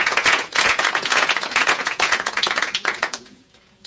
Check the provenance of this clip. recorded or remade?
remade